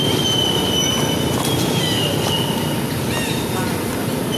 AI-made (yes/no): no